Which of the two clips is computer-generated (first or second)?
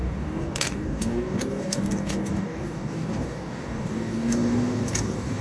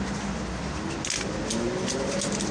first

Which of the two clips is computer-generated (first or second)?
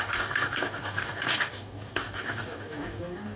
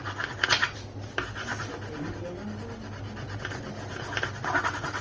first